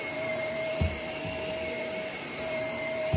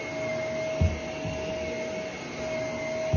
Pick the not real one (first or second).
first